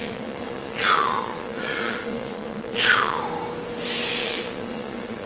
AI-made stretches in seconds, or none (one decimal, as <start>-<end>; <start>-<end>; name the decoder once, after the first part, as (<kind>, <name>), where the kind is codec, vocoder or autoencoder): 0.0-3.2 (vocoder, Vocos); 4.2-5.3